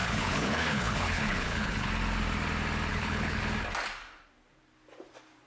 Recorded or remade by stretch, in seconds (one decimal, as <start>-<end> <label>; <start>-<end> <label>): 0.0-1.9 remade; 1.9-2.9 recorded; 2.9-3.4 remade; 3.4-5.5 recorded